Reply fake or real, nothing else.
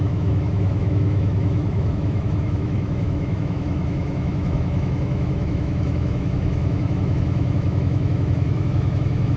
fake